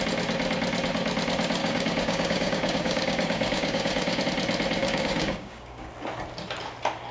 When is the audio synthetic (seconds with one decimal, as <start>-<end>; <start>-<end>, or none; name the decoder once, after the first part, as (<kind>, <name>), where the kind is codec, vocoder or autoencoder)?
1.6-4.2 (codec, DAC); 4.8-5.9